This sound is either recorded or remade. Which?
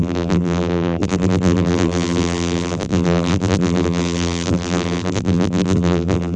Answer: remade